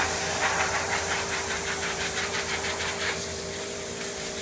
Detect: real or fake fake